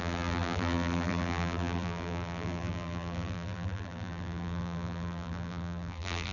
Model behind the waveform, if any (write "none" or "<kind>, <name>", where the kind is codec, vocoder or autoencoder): vocoder, BigVGAN v2